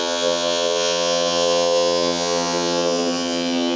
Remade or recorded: remade